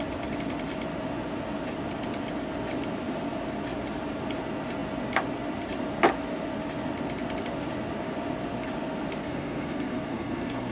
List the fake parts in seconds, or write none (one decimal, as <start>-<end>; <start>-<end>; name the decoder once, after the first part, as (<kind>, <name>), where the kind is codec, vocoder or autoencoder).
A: 9.2-10.7 (codec, SNAC)

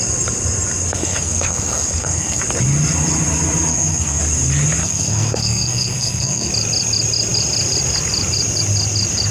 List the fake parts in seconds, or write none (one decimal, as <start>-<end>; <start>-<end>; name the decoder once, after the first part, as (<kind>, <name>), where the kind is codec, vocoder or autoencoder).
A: 1.0-2.4 (codec, SNAC); 3.7-4.2; 4.8-6.5